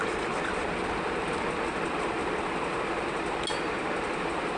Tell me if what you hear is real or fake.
real